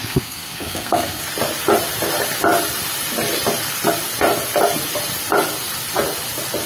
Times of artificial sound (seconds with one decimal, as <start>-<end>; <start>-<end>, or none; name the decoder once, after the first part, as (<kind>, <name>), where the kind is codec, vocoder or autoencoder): 0.0-1.2 (codec, SNAC)